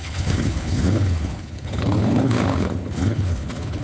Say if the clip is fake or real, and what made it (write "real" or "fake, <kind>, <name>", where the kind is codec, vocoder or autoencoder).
fake, codec, HILCodec